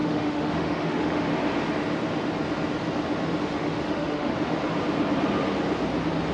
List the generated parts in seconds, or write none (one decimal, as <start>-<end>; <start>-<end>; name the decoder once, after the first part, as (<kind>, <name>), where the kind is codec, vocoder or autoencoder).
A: 0.0-1.3 (autoencoder, DAC-VAE); 3.4-4.3